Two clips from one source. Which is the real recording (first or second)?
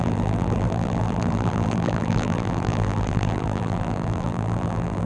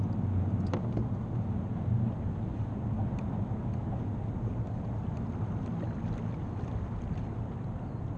second